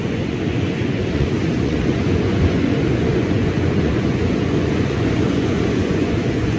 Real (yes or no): no